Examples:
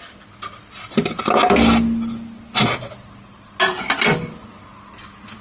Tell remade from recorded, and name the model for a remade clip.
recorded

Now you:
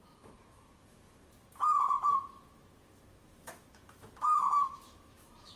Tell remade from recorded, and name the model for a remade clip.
remade, autoencoder, DAC-VAE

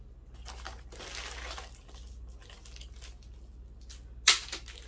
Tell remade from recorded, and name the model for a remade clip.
recorded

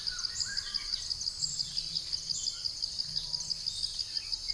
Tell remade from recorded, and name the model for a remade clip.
recorded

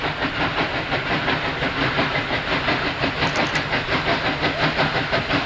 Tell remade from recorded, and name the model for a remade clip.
recorded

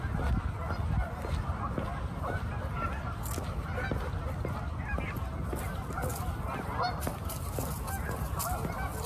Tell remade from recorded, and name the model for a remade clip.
recorded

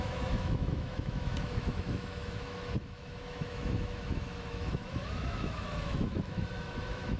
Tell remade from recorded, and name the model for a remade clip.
remade, autoencoder, DAC-VAE